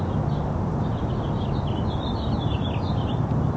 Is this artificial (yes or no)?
no